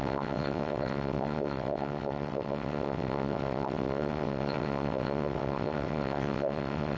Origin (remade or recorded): remade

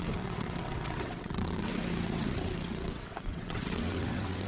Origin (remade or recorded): remade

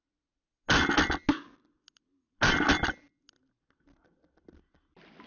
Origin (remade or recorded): recorded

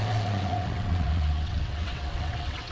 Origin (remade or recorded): remade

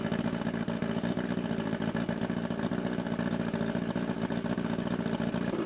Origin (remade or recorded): recorded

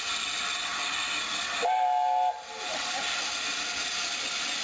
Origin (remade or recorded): recorded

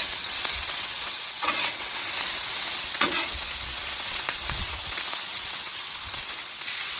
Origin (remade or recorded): remade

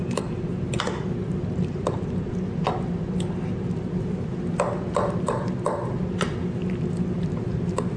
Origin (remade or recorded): recorded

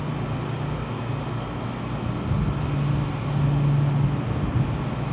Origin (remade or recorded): recorded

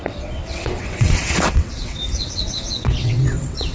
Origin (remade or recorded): remade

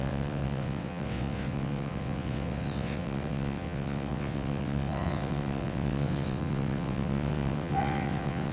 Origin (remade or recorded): remade